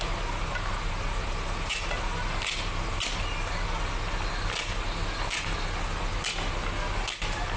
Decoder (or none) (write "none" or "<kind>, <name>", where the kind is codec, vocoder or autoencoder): none